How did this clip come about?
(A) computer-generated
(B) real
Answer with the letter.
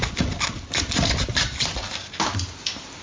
B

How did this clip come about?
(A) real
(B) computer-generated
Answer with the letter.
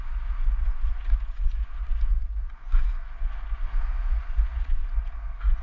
B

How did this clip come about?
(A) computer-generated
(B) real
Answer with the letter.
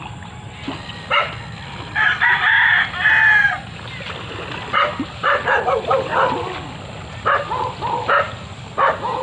B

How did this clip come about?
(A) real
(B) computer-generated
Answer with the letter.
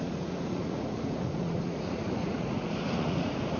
B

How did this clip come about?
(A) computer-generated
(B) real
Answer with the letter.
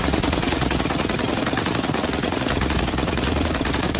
A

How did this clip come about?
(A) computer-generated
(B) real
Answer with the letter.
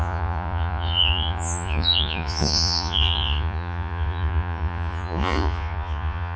A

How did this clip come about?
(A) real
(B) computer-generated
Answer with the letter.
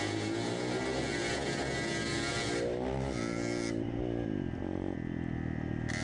A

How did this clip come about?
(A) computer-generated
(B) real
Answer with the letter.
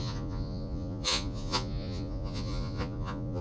A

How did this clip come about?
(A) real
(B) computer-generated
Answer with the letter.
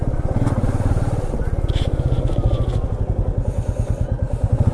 A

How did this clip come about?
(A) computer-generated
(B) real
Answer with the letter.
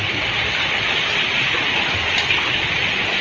B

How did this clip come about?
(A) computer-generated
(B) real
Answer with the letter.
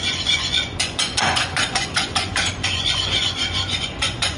A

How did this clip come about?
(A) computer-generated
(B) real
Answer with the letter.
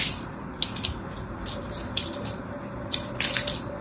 B